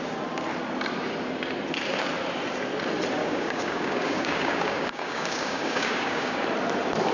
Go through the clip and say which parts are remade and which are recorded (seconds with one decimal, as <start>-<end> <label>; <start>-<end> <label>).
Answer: 0.0-3.2 recorded; 3.2-6.4 remade; 6.4-7.1 recorded

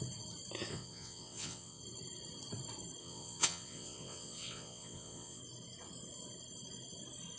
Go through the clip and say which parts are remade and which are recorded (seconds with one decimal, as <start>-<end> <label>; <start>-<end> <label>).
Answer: 0.0-0.7 recorded; 0.7-1.8 remade; 1.8-3.0 recorded; 3.0-5.4 remade; 5.4-7.4 recorded